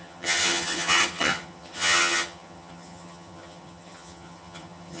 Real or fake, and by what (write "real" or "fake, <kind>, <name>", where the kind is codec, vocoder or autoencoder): fake, vocoder, HiFi-GAN